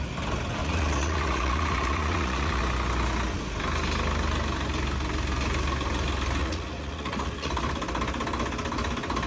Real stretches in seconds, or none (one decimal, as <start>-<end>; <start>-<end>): 0.0-0.6; 2.6-6.4; 7.5-9.3